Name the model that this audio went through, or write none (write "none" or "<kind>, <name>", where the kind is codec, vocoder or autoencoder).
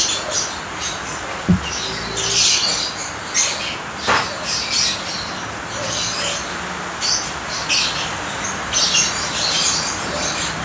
none